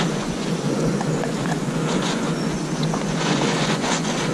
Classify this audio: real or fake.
fake